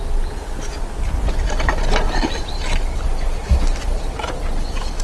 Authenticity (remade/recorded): recorded